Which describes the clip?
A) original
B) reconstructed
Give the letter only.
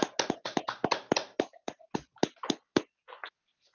A